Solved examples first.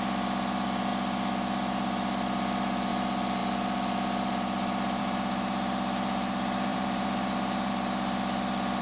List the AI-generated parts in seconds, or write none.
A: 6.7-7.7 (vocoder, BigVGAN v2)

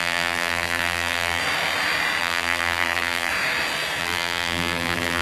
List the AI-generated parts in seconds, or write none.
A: 0.0-1.4 (vocoder, BigVGAN v2); 2.2-3.3; 4.0-5.2

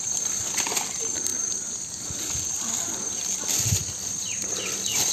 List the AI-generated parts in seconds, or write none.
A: 0.0-5.1 (vocoder, BigVGAN v2)